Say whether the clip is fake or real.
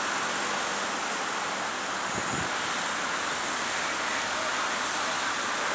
real